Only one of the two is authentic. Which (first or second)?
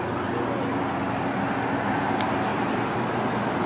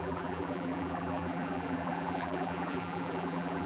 first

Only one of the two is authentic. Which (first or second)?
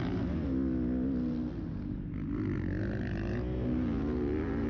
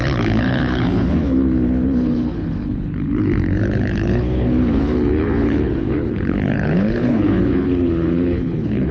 first